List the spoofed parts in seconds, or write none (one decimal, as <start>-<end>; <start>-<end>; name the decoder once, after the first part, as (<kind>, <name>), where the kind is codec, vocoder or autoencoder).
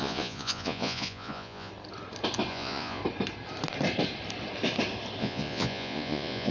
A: 0.0-1.7 (vocoder, Vocos); 2.5-3.0; 5.2-6.5